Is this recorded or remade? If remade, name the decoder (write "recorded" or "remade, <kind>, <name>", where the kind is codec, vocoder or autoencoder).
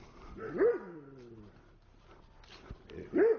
recorded